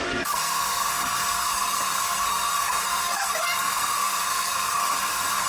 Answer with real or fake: fake